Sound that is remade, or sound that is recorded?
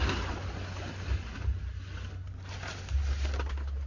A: recorded